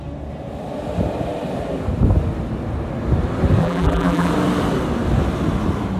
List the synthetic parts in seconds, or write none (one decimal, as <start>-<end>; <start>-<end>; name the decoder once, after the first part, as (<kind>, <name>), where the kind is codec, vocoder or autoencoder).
3.6-4.3 (vocoder, BigVGAN v2)